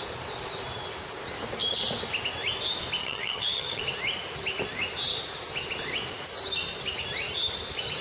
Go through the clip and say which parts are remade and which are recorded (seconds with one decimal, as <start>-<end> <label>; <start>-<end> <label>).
0.0-3.0 recorded; 3.0-3.8 remade; 3.8-8.0 recorded